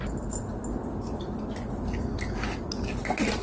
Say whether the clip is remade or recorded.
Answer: recorded